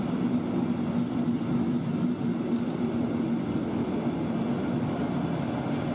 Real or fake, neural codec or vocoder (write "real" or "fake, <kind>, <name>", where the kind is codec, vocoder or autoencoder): real